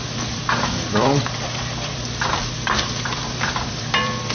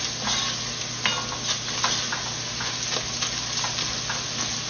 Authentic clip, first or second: second